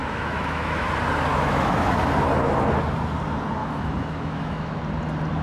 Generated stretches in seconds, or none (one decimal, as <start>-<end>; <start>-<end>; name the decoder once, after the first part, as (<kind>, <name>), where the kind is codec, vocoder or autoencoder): 0.0-0.8 (autoencoder, DAC-VAE); 1.3-1.9; 3.6-4.8

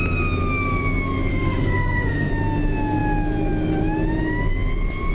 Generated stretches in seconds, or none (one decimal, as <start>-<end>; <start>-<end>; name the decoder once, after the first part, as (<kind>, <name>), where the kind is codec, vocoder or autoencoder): 1.3-2.3 (autoencoder, DAC-VAE)

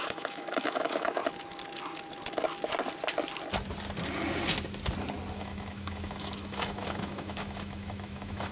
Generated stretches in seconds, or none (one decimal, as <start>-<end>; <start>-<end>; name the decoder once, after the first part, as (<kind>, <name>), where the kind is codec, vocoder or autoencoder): 0.0-1.2 (autoencoder, DAC-VAE); 5.3-8.5